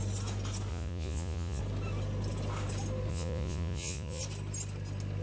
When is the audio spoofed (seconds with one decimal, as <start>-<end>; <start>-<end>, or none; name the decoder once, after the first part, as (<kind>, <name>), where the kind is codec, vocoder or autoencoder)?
0.7-1.6 (vocoder, Vocos); 3.1-4.2